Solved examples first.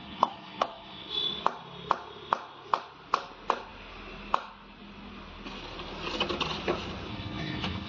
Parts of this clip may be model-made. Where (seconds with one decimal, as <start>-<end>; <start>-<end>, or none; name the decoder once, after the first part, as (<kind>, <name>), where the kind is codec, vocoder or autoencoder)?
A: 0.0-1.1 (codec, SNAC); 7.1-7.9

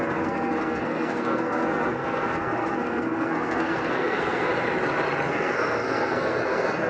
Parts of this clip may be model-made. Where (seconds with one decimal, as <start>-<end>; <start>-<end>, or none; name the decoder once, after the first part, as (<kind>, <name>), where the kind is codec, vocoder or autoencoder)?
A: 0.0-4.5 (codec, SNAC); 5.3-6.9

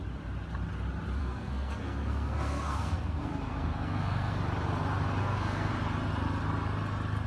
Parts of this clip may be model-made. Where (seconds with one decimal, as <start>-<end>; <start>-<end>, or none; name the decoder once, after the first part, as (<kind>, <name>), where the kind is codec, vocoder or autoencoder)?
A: 1.2-4.4 (codec, SNAC); 5.2-5.7

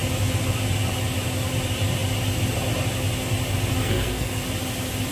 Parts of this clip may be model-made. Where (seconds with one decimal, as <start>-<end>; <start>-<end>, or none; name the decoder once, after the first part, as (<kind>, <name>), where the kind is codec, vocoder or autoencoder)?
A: 3.8-4.4 (codec, SNAC)

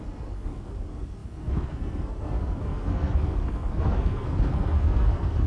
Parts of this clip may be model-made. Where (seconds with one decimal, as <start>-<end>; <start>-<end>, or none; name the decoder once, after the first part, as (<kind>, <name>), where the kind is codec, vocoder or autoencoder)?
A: 0.0-5.5 (codec, SNAC)

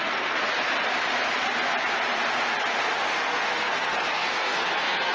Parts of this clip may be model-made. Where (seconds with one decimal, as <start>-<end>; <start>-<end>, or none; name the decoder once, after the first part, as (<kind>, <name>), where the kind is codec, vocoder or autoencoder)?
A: 0.0-0.5 (codec, SNAC); 3.0-5.1